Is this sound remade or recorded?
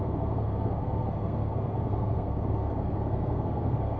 remade